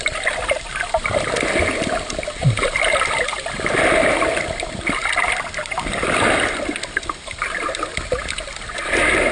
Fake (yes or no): no